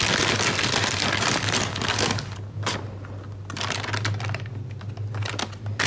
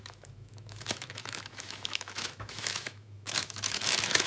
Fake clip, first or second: second